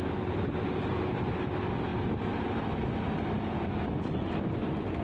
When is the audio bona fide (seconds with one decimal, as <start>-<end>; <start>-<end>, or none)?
0.0-5.0